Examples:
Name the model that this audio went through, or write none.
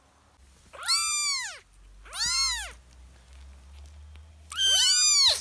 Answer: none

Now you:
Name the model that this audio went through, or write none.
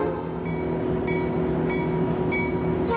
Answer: none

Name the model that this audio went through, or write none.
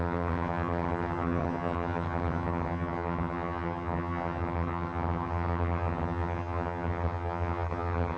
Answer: vocoder, HiFi-GAN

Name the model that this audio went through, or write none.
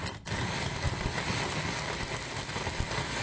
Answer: none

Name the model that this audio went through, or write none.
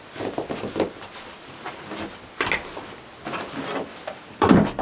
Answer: none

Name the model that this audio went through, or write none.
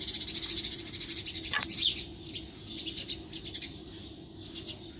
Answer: none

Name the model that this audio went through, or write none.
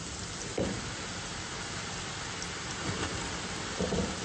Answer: none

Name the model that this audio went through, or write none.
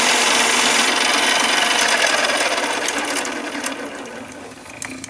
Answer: none